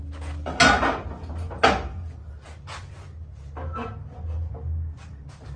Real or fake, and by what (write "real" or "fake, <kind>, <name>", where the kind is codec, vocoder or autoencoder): real